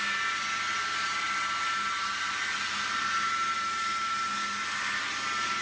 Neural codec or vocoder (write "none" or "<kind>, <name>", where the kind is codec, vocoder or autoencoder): none